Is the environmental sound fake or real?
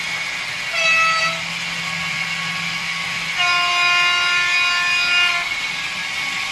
real